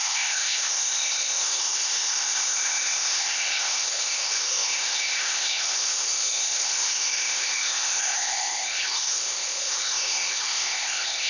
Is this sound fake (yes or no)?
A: yes